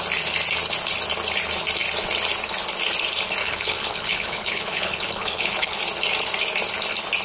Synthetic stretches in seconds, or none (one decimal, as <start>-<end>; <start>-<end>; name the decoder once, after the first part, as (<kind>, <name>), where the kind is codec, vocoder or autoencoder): 3.4-5.8 (codec, HILCodec)